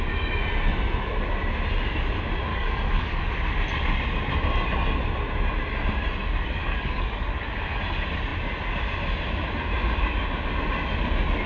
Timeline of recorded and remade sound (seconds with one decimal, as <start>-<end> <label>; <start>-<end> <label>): 0.0-2.5 recorded; 2.5-3.3 remade; 3.3-6.6 recorded; 6.6-7.4 remade; 7.4-11.5 recorded